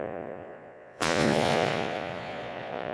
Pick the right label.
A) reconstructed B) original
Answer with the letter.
A